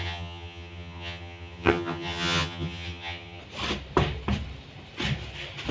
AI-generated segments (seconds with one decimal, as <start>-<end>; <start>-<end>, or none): 0.0-3.4